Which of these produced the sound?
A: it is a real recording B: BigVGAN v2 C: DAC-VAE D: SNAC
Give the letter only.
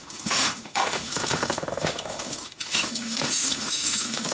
C